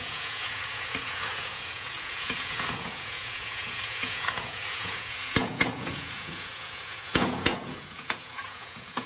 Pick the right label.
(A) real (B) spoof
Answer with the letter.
B